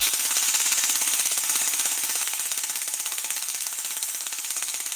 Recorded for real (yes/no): no